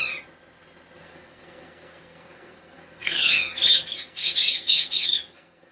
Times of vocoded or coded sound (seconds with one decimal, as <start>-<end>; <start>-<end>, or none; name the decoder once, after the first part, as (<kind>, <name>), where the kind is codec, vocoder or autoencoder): 1.0-5.7 (codec, SNAC)